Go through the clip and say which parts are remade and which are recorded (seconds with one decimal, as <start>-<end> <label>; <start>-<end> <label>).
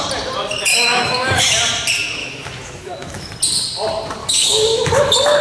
0.0-0.7 recorded; 0.7-1.4 remade; 1.4-2.2 recorded; 2.2-3.3 remade; 3.3-4.2 recorded; 4.2-5.0 remade; 5.0-5.4 recorded